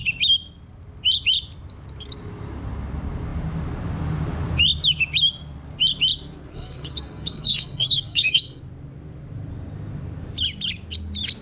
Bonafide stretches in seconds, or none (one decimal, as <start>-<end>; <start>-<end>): 0.0-6.5; 8.6-11.4